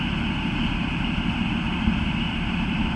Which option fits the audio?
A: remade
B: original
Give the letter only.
B